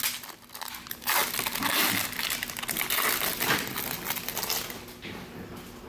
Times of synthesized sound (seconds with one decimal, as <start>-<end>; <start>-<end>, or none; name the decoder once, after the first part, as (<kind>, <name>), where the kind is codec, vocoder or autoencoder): 3.3-4.4 (vocoder, BigVGAN v2)